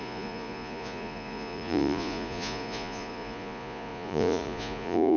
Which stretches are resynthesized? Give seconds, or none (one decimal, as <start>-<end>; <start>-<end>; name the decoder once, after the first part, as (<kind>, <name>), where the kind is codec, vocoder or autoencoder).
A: 0.0-5.2 (vocoder, Vocos)